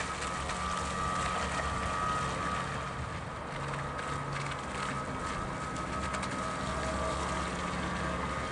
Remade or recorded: recorded